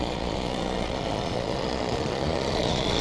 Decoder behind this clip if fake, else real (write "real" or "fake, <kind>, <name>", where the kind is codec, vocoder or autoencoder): fake, vocoder, Vocos